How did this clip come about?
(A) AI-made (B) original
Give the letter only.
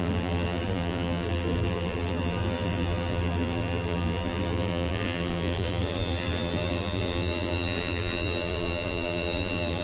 A